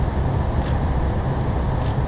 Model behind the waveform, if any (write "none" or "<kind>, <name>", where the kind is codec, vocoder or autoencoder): none